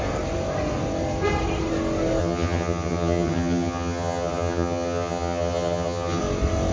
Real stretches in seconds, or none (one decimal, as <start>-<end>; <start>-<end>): 0.0-2.2; 6.2-6.7